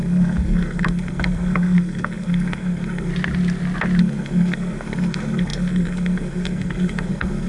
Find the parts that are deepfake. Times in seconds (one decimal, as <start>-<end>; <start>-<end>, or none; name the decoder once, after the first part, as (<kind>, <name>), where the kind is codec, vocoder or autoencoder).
0.0-3.1 (codec, SNAC); 4.0-7.5